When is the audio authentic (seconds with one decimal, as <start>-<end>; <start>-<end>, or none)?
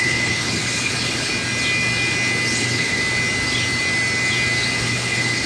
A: 1.3-2.6; 3.0-4.8